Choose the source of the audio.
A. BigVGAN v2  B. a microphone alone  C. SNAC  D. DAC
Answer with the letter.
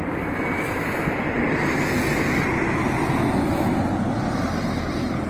B